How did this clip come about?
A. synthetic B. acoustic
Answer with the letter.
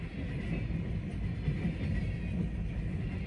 B